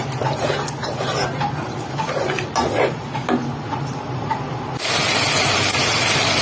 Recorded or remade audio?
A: recorded